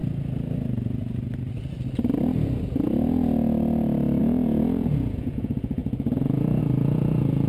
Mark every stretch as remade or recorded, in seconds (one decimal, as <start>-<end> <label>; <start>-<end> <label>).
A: 0.0-4.2 recorded; 4.2-7.5 remade